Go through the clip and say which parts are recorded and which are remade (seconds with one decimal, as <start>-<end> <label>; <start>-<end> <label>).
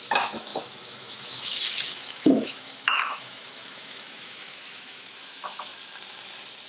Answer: 0.0-5.7 remade; 5.7-6.7 recorded